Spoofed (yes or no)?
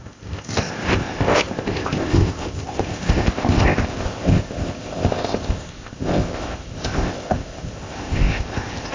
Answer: yes